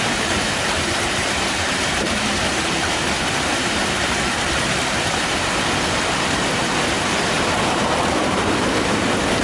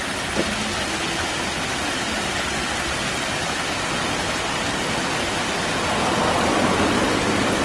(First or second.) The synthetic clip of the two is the first